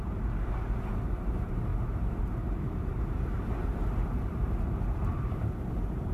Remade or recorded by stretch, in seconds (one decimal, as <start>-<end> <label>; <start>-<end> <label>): 0.0-6.1 remade